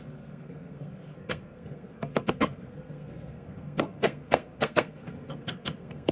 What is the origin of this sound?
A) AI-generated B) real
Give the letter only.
A